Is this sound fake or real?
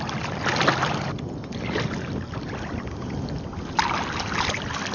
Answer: real